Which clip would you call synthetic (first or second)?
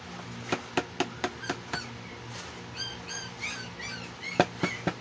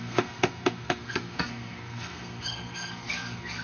second